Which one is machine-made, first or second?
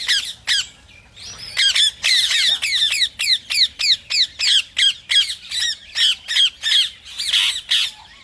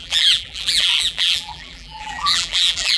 second